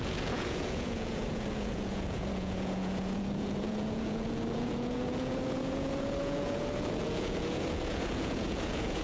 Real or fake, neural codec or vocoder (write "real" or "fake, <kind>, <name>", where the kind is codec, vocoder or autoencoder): fake, vocoder, Vocos